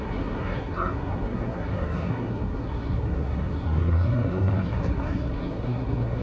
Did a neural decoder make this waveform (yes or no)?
yes